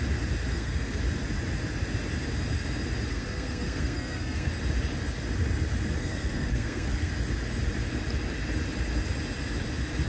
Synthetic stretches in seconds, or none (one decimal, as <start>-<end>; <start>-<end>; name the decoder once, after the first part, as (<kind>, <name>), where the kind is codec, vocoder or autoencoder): 0.5-1.0 (codec, SNAC); 3.1-4.5; 6.0-7.1